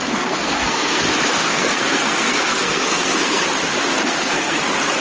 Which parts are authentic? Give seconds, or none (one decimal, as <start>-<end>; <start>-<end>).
1.0-1.4; 3.5-4.0; 4.6-5.0